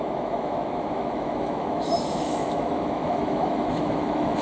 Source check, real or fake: fake